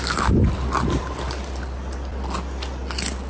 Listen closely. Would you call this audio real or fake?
real